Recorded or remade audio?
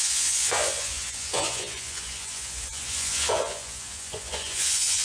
remade